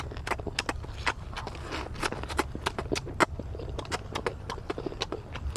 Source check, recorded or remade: recorded